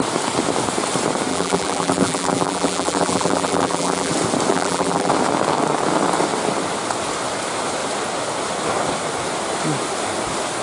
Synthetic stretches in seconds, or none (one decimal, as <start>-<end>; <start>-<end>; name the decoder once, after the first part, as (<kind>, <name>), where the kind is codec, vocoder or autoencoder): 1.3-4.1 (vocoder, BigVGAN v2); 4.5-5.1